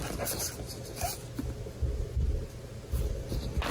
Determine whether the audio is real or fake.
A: real